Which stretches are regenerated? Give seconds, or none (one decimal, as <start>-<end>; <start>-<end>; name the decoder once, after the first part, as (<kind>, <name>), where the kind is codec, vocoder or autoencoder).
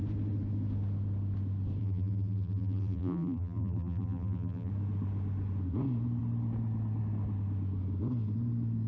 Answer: 1.8-4.7 (vocoder, BigVGAN v2)